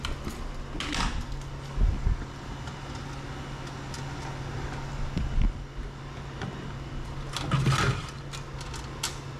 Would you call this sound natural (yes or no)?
yes